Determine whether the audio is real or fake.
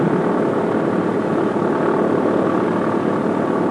real